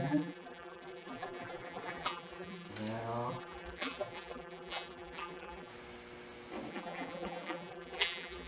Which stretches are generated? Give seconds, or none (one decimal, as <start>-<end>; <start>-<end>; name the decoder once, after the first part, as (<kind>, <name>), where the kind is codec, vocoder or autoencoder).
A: 0.0-2.7 (vocoder, BigVGAN v2); 3.3-5.7; 6.7-8.5